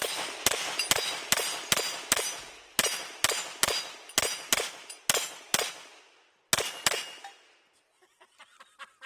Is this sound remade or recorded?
recorded